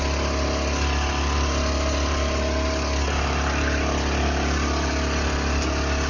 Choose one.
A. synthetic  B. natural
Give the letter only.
B